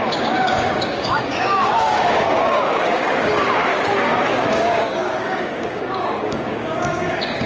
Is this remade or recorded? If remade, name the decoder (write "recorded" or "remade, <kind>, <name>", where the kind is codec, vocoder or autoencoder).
remade, codec, DAC